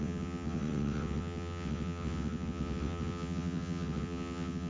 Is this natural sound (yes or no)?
no